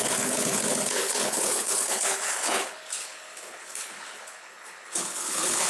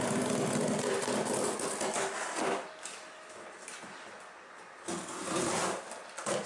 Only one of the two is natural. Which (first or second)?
second